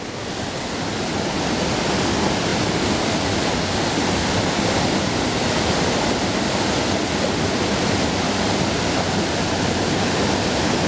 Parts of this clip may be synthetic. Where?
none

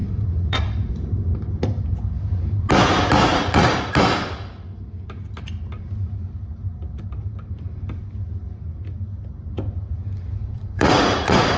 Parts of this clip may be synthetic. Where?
0.0-0.9 (vocoder, Vocos); 3.3-3.9; 10.4-11.6

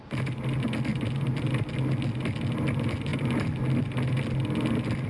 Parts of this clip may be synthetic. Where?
0.9-1.5 (vocoder, BigVGAN v2); 3.1-3.6

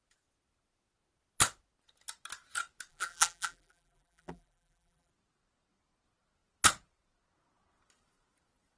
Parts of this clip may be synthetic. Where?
2.9-5.1 (vocoder, BigVGAN v2)

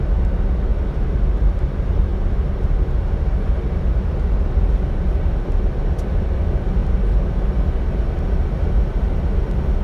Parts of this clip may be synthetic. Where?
none

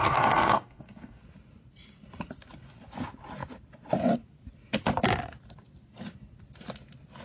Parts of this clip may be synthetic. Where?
0.0-1.2 (codec, DAC)

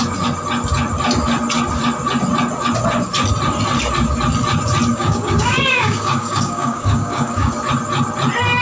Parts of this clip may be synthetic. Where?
4.9-7.5 (codec, DAC)

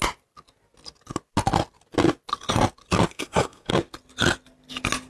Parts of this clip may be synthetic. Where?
3.1-3.7 (codec, SNAC)